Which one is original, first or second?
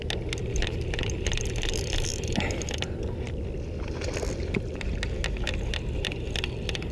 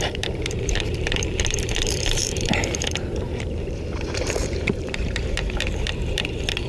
first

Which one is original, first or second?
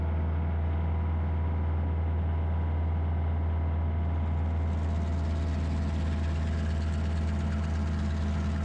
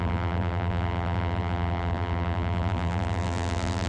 first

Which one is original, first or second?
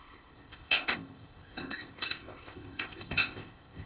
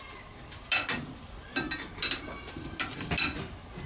second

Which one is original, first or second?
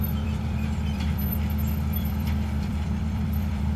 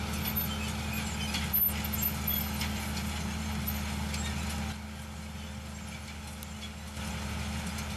second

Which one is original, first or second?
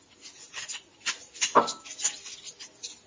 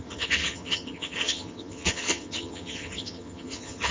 first